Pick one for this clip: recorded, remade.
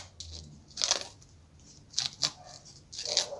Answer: recorded